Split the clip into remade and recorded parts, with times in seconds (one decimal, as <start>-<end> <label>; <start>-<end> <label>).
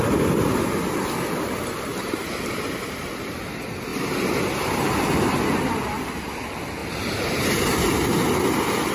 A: 0.0-3.9 remade; 3.9-5.7 recorded; 5.7-8.9 remade